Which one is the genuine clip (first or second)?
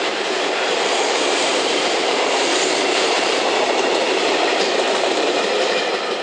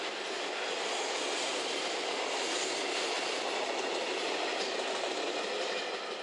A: second